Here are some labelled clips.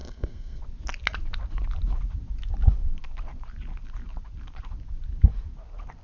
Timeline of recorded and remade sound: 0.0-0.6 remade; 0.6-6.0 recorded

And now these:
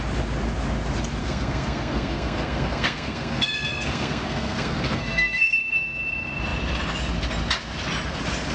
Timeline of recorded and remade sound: 0.0-1.2 recorded; 1.2-6.0 remade; 6.0-8.5 recorded

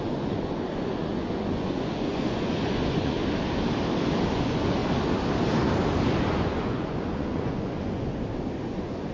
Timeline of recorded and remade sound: 0.0-3.2 remade; 3.2-4.3 recorded; 4.3-4.8 remade; 4.8-6.3 recorded; 6.3-8.1 remade; 8.1-8.7 recorded; 8.7-9.1 remade

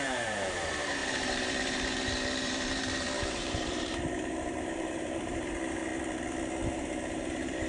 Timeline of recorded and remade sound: 0.0-5.9 remade; 5.9-6.7 recorded; 6.7-7.7 remade

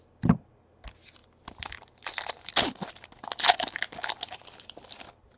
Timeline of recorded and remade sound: 0.0-5.4 recorded

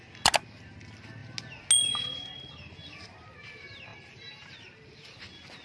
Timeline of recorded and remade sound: 0.0-3.9 recorded; 3.9-4.5 remade; 4.5-5.6 recorded

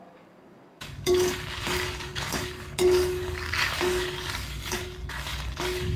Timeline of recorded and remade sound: 0.0-6.0 remade

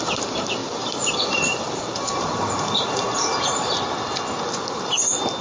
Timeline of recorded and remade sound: 0.0-0.6 recorded; 0.6-3.8 remade; 3.8-5.4 recorded